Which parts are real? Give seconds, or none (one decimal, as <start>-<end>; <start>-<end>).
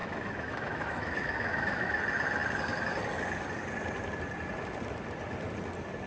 2.0-6.1